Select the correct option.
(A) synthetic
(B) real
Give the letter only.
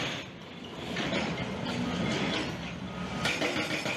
B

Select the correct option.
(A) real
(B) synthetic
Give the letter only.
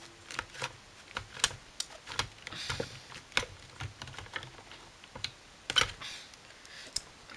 A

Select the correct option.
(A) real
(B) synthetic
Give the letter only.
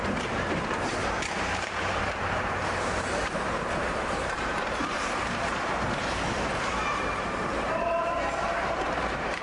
B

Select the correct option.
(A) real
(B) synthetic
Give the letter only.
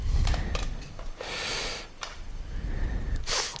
A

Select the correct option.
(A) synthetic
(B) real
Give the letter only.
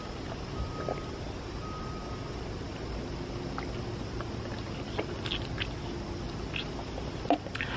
B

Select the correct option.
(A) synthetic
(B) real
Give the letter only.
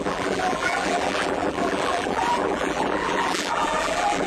A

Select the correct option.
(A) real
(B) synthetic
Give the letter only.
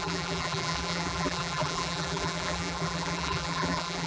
B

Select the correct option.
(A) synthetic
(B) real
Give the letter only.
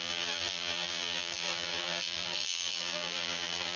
A